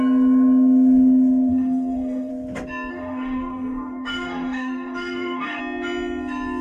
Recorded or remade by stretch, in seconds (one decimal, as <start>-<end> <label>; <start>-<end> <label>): 0.0-1.5 recorded; 1.5-2.3 remade; 2.3-2.9 recorded; 2.9-5.6 remade; 5.6-6.6 recorded